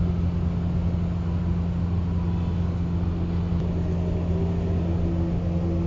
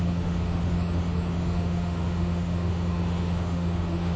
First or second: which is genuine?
first